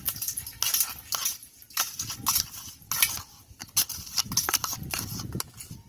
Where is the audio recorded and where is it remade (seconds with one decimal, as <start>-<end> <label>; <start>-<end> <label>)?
0.0-5.9 recorded